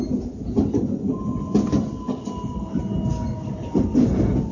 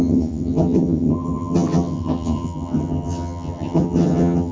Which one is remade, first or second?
second